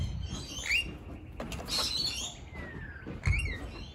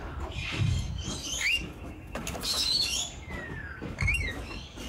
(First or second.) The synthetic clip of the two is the second